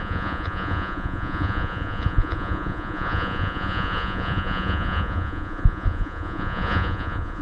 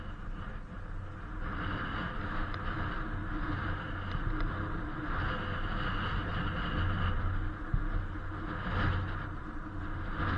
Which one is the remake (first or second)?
first